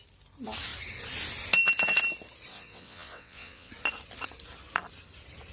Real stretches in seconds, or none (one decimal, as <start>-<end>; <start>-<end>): 0.0-2.5; 3.7-5.5